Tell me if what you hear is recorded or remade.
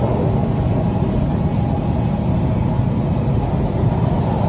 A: recorded